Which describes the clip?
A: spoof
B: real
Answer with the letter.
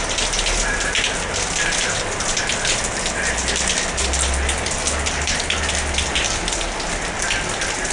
B